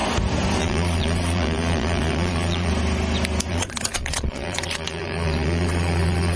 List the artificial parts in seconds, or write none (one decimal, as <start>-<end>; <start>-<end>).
0.6-2.7; 3.5-6.4